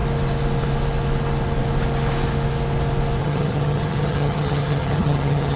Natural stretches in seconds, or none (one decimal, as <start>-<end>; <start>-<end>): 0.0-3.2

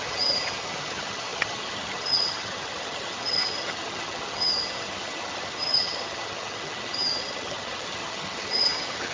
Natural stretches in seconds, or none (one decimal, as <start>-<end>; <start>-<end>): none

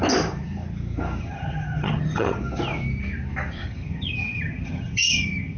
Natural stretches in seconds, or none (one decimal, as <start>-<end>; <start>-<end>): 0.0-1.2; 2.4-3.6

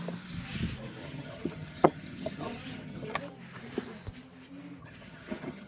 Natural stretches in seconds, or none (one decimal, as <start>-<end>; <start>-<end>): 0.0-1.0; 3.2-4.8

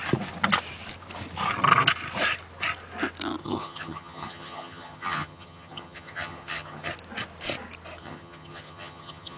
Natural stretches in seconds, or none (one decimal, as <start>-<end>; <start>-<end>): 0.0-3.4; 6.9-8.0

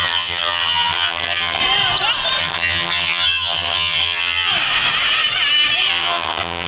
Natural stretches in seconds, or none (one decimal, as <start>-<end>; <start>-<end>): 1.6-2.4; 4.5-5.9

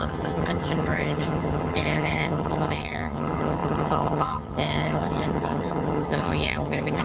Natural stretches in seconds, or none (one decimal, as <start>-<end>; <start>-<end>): none

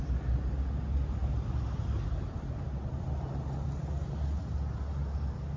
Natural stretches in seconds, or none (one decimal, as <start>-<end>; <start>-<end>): 0.0-5.6